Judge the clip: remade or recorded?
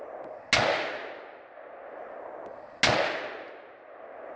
recorded